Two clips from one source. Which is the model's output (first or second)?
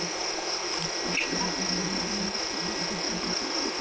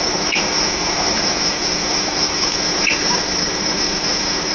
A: second